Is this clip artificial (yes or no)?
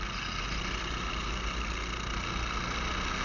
no